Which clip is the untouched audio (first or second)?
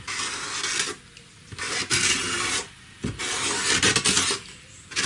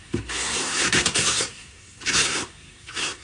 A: first